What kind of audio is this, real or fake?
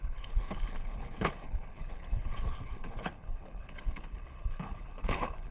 fake